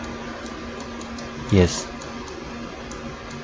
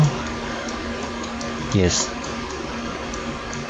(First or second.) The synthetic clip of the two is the second